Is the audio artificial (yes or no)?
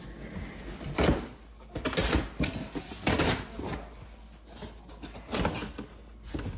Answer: no